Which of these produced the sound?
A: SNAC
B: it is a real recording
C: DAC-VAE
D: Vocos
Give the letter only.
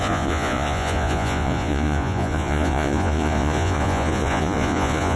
D